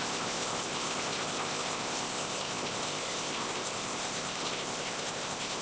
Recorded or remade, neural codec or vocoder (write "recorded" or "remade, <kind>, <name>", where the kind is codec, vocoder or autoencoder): remade, codec, ZipCodec